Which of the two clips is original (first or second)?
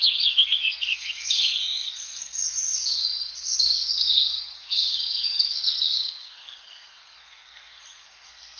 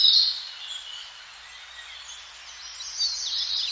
second